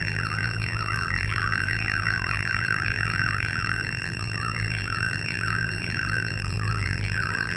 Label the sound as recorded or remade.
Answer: remade